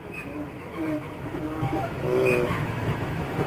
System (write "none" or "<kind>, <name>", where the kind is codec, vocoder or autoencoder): autoencoder, DAC-VAE